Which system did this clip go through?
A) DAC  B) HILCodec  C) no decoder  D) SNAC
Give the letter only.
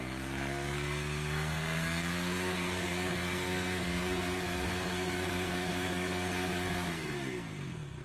D